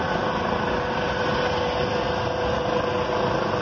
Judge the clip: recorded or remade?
recorded